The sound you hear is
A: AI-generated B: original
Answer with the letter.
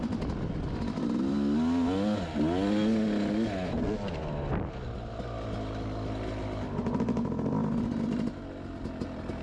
B